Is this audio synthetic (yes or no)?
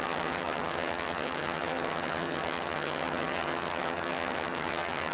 yes